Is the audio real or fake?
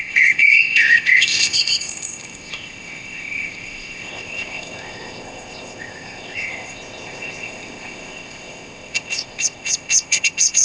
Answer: fake